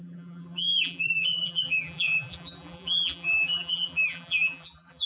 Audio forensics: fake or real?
fake